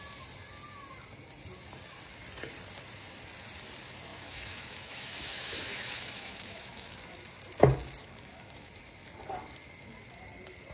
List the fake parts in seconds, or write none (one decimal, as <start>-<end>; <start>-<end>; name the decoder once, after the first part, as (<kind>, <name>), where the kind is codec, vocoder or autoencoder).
4.1-6.9 (autoencoder, DAC-VAE); 8.0-8.7